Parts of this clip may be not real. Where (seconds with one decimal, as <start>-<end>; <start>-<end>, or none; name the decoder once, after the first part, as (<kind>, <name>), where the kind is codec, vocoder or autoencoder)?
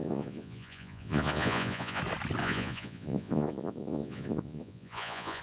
0.0-2.0 (vocoder, Vocos); 2.4-5.4